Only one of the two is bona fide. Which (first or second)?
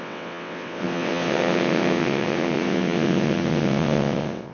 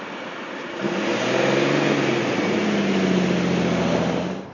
second